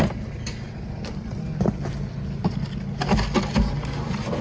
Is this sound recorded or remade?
recorded